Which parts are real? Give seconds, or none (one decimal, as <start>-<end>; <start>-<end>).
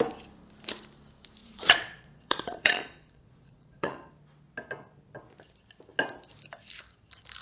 0.0-1.4; 4.1-7.4